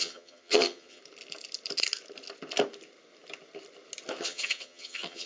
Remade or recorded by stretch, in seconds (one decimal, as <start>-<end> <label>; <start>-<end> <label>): 0.0-1.0 remade; 1.0-4.2 recorded; 4.2-5.3 remade